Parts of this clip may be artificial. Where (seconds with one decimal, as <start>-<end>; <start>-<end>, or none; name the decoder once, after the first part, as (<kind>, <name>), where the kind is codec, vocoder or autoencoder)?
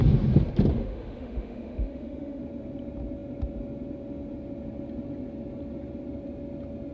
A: 0.7-2.4 (autoencoder, DAC-VAE)